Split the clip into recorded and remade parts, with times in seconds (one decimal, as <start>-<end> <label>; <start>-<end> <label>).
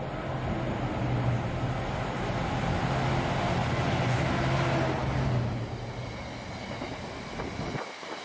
0.0-3.6 recorded; 3.6-4.2 remade; 4.2-8.2 recorded